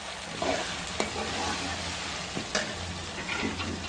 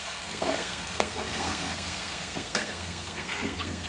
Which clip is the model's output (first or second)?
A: second